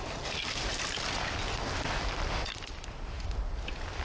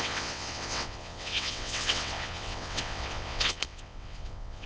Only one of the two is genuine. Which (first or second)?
first